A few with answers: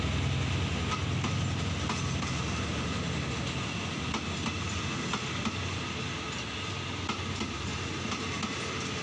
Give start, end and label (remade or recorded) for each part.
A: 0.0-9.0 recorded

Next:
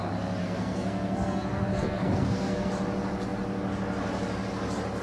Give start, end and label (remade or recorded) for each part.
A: 0.0-0.4 recorded; 0.4-2.7 remade; 2.7-5.0 recorded

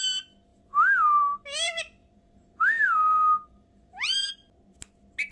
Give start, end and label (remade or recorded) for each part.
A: 0.0-2.0 recorded; 2.0-4.3 remade; 4.3-5.3 recorded

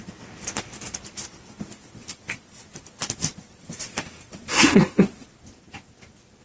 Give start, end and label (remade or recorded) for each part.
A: 0.0-4.5 recorded; 4.5-5.0 remade; 5.0-6.4 recorded

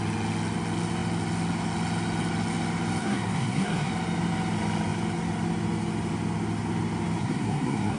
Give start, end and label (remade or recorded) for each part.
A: 0.0-3.0 recorded; 3.0-3.9 remade; 3.9-7.2 recorded; 7.2-8.0 remade

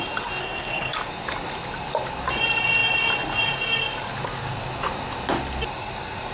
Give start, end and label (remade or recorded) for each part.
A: 0.0-0.4 recorded; 0.4-1.0 remade; 1.0-6.3 recorded

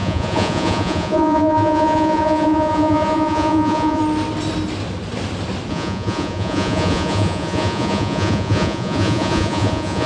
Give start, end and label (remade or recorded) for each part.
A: 0.0-4.0 remade; 4.0-5.7 recorded; 5.7-10.1 remade

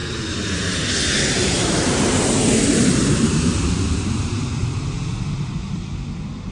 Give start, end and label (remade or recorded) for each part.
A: 0.0-1.2 recorded; 1.2-4.6 remade; 4.6-6.5 recorded